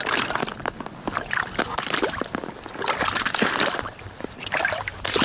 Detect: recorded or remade recorded